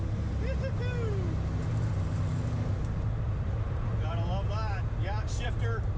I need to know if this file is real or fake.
real